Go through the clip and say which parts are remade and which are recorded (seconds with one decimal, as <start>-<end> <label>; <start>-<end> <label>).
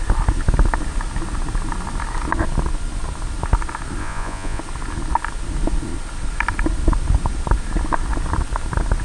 0.0-4.0 recorded; 4.0-4.6 remade; 4.6-9.0 recorded